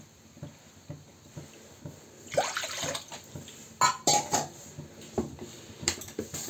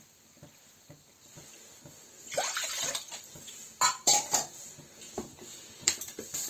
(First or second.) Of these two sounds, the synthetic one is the second